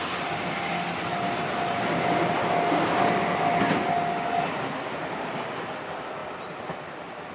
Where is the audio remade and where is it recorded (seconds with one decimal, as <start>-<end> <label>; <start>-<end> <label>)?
0.0-7.3 recorded